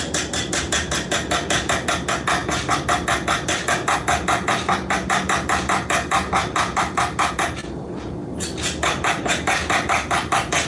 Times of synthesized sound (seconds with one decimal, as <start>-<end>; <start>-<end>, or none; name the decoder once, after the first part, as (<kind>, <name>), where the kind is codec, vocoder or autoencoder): none

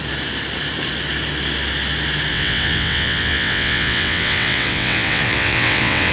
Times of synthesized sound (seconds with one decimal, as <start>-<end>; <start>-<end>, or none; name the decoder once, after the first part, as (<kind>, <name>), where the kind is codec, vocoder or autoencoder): 2.3-6.1 (vocoder, WaveNeXt)

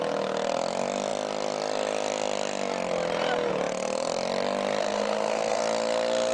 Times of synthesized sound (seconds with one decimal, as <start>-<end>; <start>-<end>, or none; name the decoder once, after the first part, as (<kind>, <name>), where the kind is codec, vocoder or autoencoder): 4.8-5.6 (codec, SNAC)

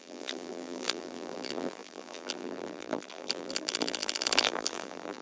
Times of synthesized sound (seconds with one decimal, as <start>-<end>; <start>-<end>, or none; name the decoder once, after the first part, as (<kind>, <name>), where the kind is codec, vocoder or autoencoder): 0.0-5.2 (vocoder, BigVGAN v2)

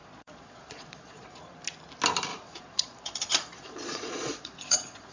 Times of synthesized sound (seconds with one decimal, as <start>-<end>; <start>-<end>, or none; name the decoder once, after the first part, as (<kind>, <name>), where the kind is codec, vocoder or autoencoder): 0.0-1.4 (vocoder, Vocos); 2.3-5.1

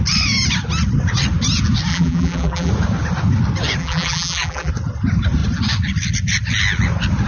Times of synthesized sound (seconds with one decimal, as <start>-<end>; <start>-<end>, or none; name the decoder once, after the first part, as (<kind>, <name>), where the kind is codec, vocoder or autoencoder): 1.9-2.7 (vocoder, BigVGAN v2); 3.8-4.7

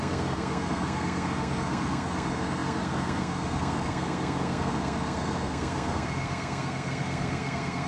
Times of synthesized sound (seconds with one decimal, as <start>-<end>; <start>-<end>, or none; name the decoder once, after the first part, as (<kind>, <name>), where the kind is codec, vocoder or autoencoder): 0.0-7.9 (codec, SNAC)

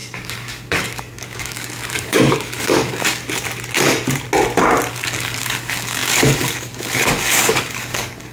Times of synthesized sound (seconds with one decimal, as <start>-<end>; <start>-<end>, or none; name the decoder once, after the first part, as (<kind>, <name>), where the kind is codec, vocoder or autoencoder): 0.0-3.2 (codec, DAC); 4.9-8.3